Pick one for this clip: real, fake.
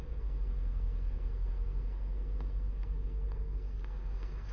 fake